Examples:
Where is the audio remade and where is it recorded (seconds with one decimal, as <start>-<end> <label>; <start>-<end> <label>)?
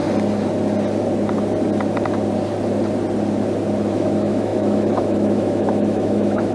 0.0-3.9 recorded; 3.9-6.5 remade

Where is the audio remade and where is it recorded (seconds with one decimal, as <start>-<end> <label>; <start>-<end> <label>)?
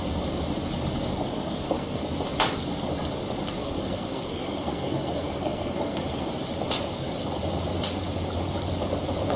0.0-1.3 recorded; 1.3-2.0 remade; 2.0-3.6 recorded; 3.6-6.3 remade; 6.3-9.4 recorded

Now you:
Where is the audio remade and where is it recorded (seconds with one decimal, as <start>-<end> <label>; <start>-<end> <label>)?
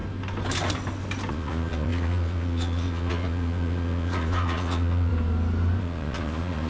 0.0-1.3 recorded; 1.3-5.1 remade; 5.1-5.8 recorded; 5.8-6.7 remade